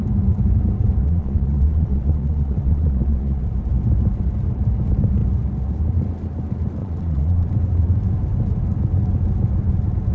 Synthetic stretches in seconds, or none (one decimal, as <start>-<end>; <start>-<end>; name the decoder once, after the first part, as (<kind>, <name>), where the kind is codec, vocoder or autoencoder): 1.0-3.5 (vocoder, Vocos); 6.8-7.5